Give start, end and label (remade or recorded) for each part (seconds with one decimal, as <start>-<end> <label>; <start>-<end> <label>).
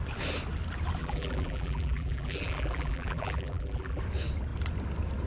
0.0-1.0 recorded; 1.0-4.0 remade; 4.0-5.3 recorded